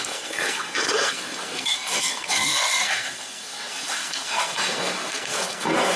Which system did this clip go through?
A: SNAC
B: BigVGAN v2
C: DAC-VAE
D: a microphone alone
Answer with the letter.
A